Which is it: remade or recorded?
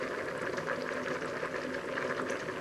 recorded